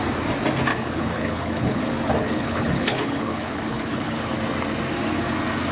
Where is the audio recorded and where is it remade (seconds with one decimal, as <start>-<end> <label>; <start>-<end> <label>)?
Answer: 0.0-0.7 recorded; 0.7-1.8 remade; 1.8-2.2 recorded; 2.2-4.4 remade; 4.4-5.7 recorded